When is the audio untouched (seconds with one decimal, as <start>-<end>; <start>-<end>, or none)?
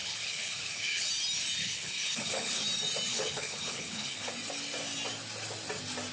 1.1-1.6; 2.6-3.1; 4.3-6.1